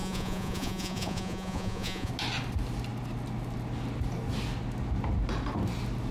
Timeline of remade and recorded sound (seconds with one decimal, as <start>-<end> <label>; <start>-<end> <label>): 0.0-2.1 remade; 2.1-6.1 recorded

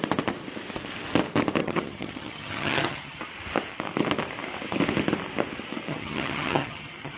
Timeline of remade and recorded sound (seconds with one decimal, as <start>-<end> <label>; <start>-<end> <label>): 0.0-1.6 recorded; 1.6-3.2 remade; 3.2-5.9 recorded; 5.9-7.2 remade

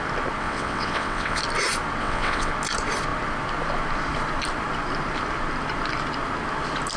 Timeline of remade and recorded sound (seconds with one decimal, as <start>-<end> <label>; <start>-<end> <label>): 0.0-0.4 recorded; 0.4-1.4 remade; 1.4-2.0 recorded; 2.0-2.5 remade; 2.5-7.0 recorded

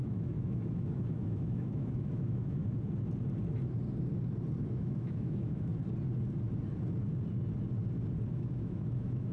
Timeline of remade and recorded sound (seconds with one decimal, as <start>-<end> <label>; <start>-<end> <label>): 0.0-2.6 remade; 2.6-4.7 recorded; 4.7-5.7 remade; 5.7-8.3 recorded; 8.3-9.3 remade

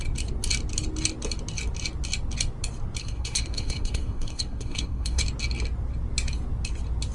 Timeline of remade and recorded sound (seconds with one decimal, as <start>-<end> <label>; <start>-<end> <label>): 0.0-3.0 recorded; 3.0-5.2 remade; 5.2-7.1 recorded